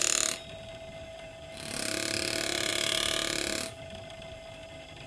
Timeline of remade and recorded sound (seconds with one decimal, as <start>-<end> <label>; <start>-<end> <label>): 0.0-5.1 recorded